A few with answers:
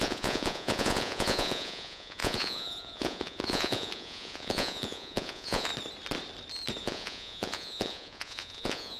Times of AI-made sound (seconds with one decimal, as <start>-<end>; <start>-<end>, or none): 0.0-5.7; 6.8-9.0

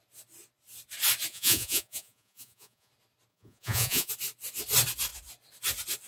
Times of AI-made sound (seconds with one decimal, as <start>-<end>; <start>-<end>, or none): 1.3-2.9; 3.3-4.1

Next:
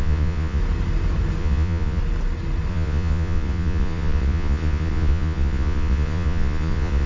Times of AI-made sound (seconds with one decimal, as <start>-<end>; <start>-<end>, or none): 0.0-0.6; 1.4-2.0; 2.7-7.1